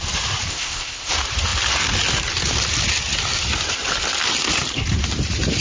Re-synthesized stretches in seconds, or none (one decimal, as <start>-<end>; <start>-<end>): 0.5-1.1